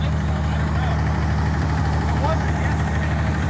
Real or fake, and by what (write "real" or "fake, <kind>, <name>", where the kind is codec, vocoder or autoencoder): real